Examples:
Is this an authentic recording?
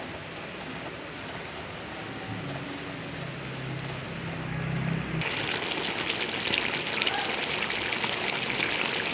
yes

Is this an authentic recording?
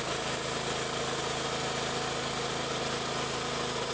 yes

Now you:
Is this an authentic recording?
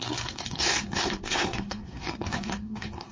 no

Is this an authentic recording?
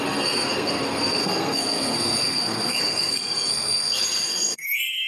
no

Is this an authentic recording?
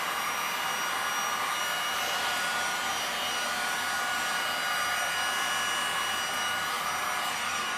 yes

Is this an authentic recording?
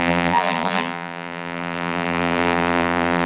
no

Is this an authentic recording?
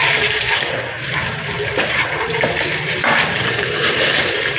no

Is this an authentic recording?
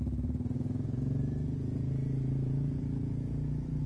no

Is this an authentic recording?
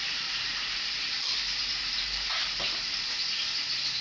no